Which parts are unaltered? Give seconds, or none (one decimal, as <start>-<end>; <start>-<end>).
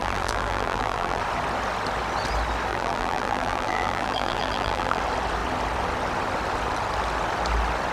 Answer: 1.2-2.7; 5.0-7.9